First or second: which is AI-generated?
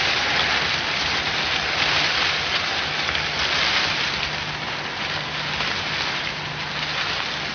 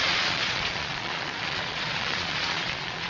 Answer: second